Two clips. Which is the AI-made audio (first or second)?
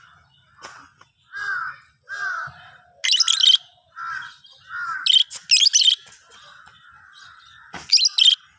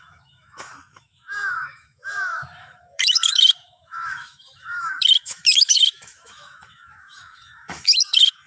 second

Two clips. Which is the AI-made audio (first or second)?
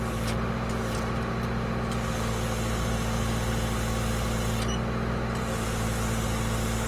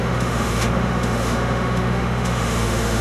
second